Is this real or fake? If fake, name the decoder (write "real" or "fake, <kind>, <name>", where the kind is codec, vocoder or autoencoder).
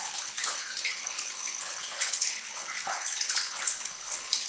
fake, codec, HILCodec